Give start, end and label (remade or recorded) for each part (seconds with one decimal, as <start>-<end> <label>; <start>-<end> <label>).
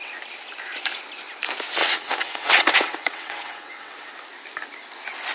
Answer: 0.0-1.8 recorded; 1.8-4.1 remade; 4.1-5.3 recorded